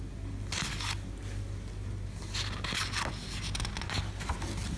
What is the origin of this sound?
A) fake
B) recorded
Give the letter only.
B